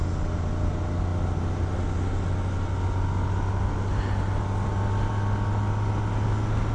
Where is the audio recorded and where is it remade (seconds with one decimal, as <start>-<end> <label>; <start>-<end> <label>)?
0.0-6.7 recorded